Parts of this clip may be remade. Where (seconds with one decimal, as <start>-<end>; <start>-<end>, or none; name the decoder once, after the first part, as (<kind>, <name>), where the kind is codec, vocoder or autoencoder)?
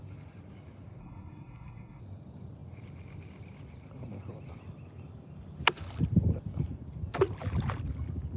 1.0-2.0 (codec, SNAC)